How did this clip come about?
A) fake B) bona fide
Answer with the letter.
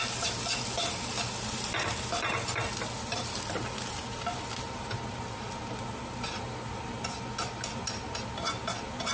B